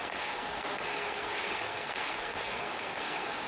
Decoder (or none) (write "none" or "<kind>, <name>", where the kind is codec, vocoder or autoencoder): codec, SNAC